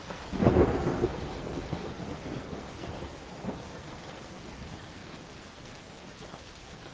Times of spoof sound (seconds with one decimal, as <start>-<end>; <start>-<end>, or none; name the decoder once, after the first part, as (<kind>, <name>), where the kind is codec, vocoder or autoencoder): 0.0-6.9 (codec, SNAC)